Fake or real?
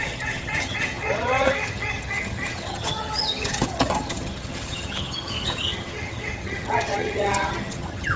fake